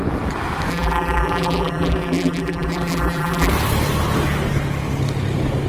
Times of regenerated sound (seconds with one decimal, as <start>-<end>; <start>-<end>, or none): 0.7-3.5